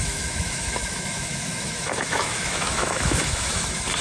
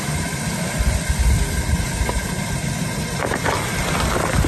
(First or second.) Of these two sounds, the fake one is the first